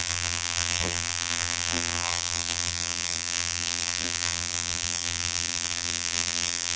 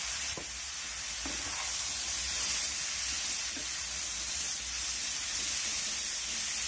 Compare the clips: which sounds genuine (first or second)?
second